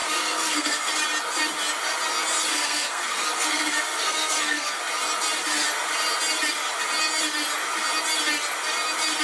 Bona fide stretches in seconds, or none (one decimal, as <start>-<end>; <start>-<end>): 0.9-2.5; 4.8-9.2